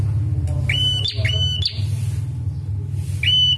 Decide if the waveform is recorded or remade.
recorded